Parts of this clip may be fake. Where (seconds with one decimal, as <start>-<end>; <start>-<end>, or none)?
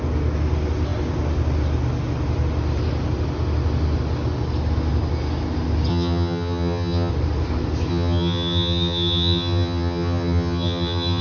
5.9-7.1; 7.9-11.2